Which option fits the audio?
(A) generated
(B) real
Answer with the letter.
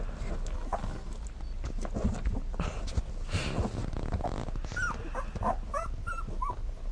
B